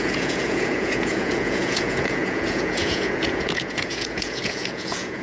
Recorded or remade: remade